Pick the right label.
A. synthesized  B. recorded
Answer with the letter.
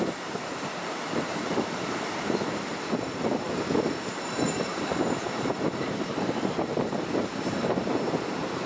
A